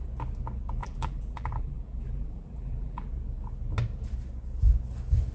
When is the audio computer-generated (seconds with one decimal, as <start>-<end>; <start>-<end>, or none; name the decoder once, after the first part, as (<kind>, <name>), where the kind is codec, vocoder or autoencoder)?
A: 0.8-3.1 (vocoder, BigVGAN v2)